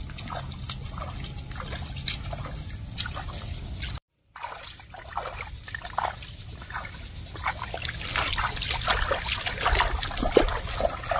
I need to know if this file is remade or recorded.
recorded